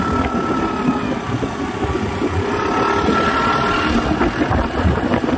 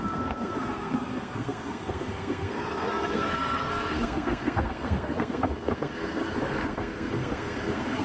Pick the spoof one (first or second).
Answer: second